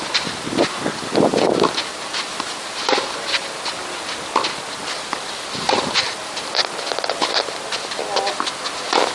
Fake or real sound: real